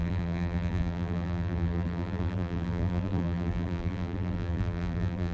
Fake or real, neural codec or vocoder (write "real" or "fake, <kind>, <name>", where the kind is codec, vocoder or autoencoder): fake, vocoder, BigVGAN v2